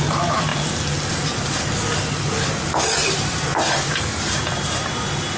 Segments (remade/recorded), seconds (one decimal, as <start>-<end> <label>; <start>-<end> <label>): 0.0-3.5 recorded; 3.5-4.4 remade; 4.4-5.4 recorded